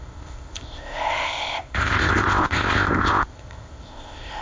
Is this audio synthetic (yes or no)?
yes